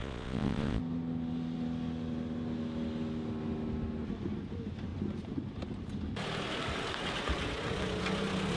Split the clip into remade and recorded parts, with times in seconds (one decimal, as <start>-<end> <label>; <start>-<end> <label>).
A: 0.0-0.8 remade; 0.8-8.6 recorded